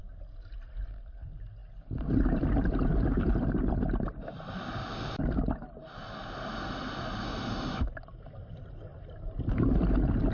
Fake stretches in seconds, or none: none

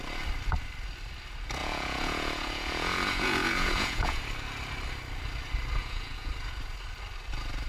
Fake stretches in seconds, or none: 1.6-4.2 (vocoder, Vocos); 5.8-6.3

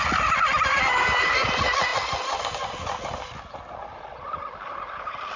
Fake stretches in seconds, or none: none